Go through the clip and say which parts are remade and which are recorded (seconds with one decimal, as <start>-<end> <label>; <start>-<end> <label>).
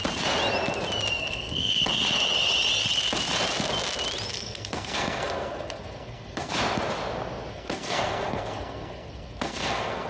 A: 0.0-1.2 recorded; 1.2-1.8 remade; 1.8-4.3 recorded; 4.3-6.5 remade; 6.5-7.5 recorded; 7.5-10.1 remade